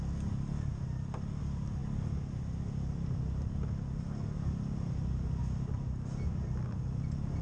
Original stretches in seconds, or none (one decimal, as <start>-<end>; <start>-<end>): 0.0-7.4

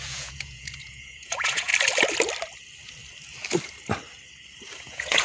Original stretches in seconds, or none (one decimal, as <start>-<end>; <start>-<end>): 1.7-4.8

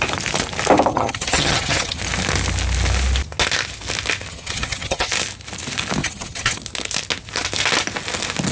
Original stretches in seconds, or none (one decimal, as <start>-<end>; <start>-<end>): 0.0-0.9; 2.0-4.3; 5.1-6.0; 6.6-8.5

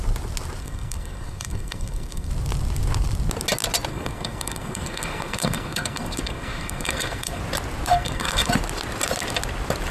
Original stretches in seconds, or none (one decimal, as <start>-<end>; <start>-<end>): 0.0-0.6; 2.3-3.9; 7.4-7.9; 8.5-9.9

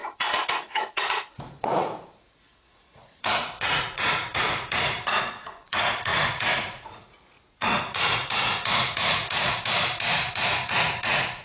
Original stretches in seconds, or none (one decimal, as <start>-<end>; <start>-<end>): none

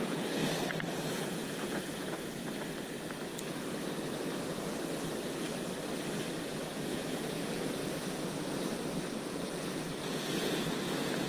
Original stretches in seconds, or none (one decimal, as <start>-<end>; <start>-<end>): 0.4-1.1; 2.4-6.3; 7.8-9.2

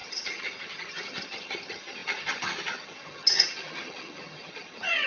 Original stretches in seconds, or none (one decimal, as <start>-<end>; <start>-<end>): none